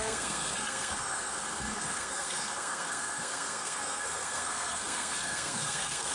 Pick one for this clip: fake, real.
fake